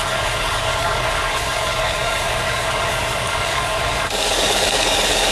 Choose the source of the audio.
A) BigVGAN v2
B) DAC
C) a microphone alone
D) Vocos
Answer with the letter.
B